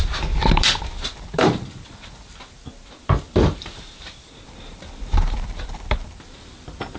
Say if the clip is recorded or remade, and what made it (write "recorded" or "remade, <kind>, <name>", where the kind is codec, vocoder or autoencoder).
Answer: recorded